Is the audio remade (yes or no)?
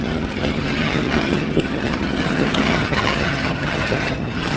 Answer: yes